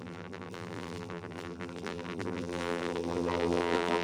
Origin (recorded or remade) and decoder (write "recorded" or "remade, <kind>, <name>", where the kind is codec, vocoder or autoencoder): remade, vocoder, BigVGAN v2